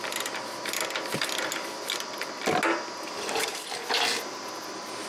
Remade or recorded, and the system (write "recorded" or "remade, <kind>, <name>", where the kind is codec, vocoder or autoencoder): recorded